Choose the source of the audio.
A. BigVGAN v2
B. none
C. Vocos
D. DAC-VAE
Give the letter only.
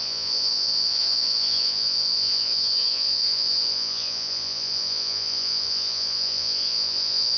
C